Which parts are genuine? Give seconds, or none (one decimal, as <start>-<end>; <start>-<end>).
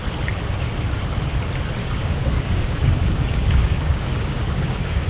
0.0-1.8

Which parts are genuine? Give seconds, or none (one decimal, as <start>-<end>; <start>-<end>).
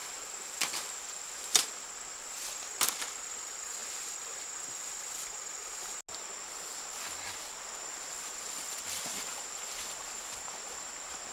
3.8-8.8